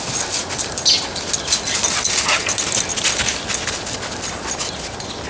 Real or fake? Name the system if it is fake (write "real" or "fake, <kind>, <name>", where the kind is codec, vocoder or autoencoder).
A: real